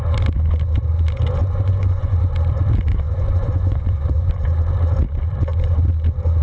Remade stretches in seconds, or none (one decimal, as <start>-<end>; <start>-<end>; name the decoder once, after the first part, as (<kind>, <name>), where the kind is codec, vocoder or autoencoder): 1.4-2.3 (vocoder, Vocos); 2.9-4.3